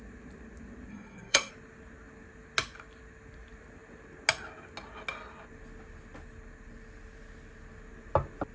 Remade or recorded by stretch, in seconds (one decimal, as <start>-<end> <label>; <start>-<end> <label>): 0.0-0.9 recorded; 0.9-1.5 remade; 1.5-8.5 recorded